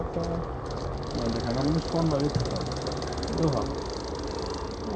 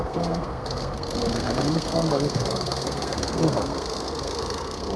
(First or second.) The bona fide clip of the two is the first